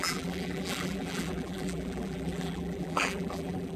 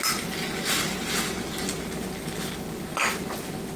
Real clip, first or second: second